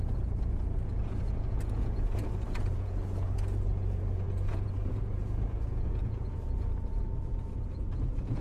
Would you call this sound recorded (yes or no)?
no